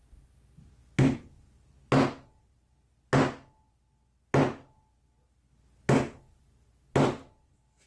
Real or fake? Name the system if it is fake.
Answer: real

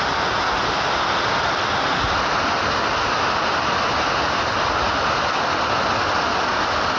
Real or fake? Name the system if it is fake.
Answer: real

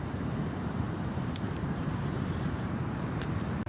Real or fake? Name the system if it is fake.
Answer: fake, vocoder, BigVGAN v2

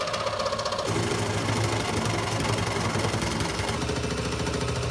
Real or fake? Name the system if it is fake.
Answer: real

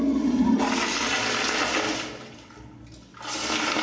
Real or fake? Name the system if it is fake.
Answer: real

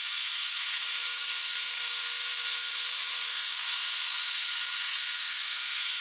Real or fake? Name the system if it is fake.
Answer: fake, codec, SNAC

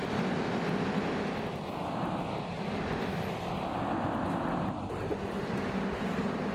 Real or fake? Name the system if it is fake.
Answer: real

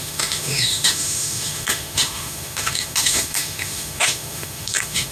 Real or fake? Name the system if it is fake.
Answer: fake, autoencoder, DAC-VAE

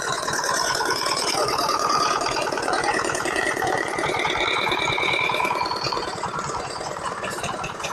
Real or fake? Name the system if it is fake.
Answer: fake, vocoder, Vocos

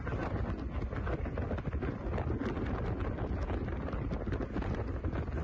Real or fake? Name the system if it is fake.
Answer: real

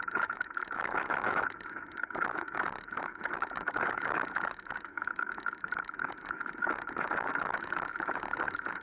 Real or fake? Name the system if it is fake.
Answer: fake, autoencoder, DAC-VAE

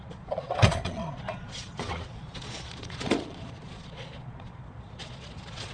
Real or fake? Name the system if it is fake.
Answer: fake, vocoder, Vocos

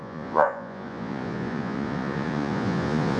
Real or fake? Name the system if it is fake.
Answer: fake, vocoder, Vocos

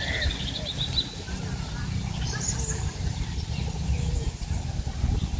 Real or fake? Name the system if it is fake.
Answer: real